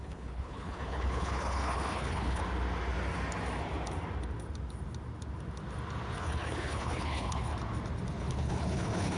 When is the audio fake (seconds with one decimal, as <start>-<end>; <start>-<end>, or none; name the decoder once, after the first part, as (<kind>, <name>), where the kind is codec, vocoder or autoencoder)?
0.0-2.4 (codec, HILCodec); 6.2-7.5; 8.2-9.2